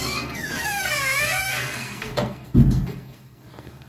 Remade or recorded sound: remade